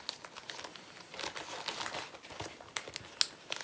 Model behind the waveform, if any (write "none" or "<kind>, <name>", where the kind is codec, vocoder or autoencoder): none